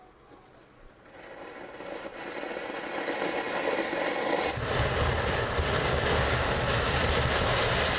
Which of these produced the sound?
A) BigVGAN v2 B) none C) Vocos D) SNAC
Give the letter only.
B